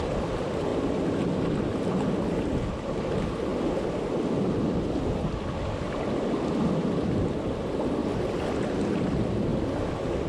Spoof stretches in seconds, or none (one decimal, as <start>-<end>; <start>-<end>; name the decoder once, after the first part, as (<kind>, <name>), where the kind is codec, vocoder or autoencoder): 0.0-0.7 (vocoder, BigVGAN v2); 2.7-3.5; 6.0-9.5